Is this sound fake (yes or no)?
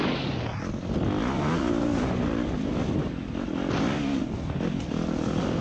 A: no